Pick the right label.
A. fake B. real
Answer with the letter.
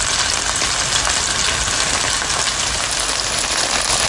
B